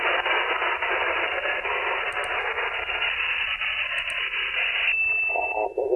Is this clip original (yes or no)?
yes